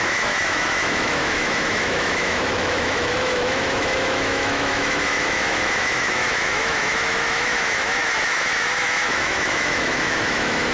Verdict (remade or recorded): remade